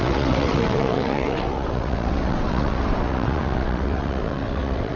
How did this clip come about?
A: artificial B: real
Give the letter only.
A